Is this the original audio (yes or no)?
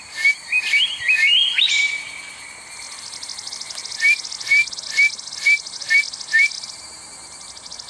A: yes